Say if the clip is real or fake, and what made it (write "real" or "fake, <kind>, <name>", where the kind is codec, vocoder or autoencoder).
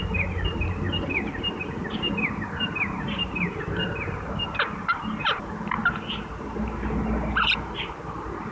fake, vocoder, BigVGAN v2